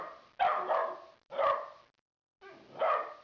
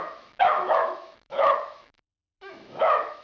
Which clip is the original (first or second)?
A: first